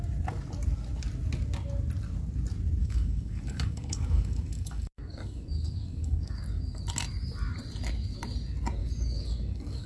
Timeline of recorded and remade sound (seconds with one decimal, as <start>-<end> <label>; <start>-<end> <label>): 0.0-2.8 recorded; 2.8-6.8 remade; 6.8-8.8 recorded; 8.8-9.9 remade